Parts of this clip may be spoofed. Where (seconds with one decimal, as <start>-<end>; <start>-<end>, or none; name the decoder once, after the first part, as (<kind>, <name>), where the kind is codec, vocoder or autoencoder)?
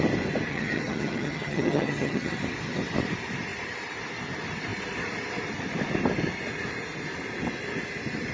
0.5-2.4 (vocoder, HiFi-GAN)